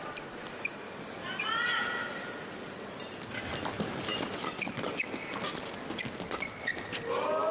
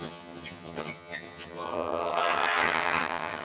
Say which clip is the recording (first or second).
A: first